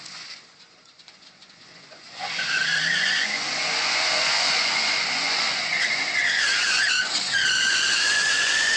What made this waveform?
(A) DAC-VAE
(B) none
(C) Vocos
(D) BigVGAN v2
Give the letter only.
C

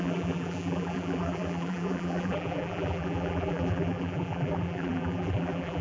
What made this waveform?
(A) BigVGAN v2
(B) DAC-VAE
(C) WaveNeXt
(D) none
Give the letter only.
A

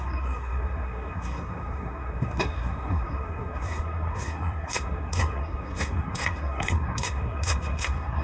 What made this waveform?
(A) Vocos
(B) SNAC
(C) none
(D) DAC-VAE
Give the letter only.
B